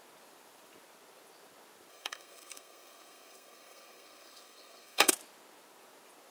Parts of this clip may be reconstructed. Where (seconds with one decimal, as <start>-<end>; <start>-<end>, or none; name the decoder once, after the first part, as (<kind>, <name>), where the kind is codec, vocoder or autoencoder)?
1.9-5.1 (codec, SNAC)